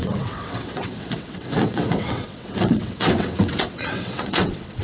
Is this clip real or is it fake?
fake